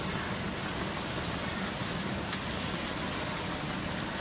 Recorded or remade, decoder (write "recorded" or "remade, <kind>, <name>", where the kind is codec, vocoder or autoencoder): recorded